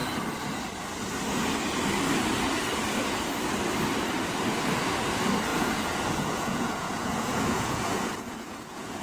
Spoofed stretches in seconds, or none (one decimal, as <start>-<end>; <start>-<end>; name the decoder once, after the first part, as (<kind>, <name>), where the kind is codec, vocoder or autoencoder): 5.5-9.0 (vocoder, Vocos)